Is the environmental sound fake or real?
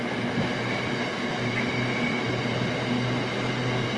real